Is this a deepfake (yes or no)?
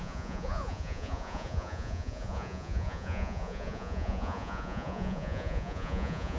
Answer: yes